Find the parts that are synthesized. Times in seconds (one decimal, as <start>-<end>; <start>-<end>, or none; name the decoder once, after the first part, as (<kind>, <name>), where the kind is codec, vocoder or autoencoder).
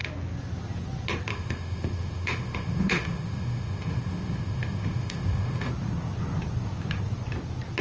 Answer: 1.3-5.7 (autoencoder, DAC-VAE)